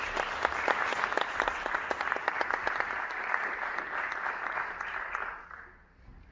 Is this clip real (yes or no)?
yes